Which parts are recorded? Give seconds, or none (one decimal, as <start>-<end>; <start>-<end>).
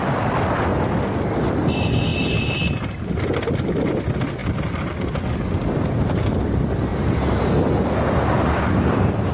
0.0-9.3